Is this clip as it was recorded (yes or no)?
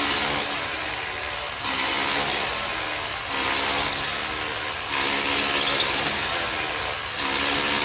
yes